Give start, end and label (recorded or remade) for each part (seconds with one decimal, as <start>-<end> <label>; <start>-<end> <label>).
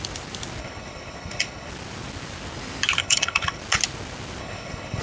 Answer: 0.0-0.6 recorded; 0.6-1.7 remade; 1.7-3.0 recorded; 3.0-3.6 remade; 3.6-4.4 recorded; 4.4-5.0 remade